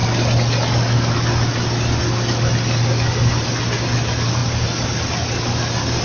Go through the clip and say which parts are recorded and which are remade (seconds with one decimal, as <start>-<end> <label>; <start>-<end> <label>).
0.0-6.0 recorded